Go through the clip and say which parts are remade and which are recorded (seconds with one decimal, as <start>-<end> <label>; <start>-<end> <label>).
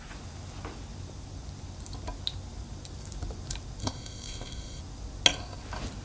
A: 0.0-3.8 recorded; 3.8-4.8 remade; 4.8-6.0 recorded